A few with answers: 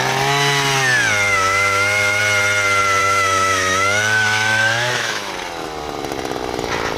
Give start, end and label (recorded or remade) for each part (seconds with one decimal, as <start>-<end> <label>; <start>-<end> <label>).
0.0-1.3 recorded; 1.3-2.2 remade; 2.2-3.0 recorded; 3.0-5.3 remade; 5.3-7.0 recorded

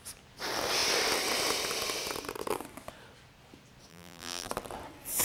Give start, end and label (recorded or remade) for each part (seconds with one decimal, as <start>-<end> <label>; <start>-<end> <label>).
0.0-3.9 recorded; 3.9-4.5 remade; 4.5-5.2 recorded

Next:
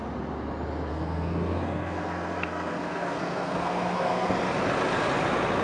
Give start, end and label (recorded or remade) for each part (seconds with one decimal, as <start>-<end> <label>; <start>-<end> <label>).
0.0-0.9 recorded; 0.9-4.3 remade; 4.3-5.6 recorded